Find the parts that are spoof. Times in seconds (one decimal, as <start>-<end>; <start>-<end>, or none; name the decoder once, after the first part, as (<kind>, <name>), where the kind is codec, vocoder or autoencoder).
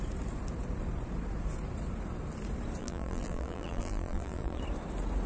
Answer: 2.8-4.6 (vocoder, BigVGAN v2)